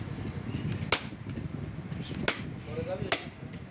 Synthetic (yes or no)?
no